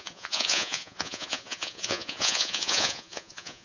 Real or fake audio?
fake